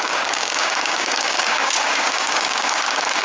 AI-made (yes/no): yes